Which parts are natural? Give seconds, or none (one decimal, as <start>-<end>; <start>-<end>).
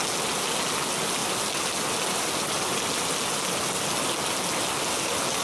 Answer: 0.0-5.4